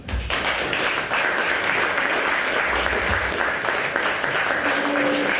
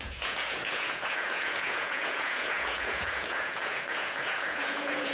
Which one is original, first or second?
first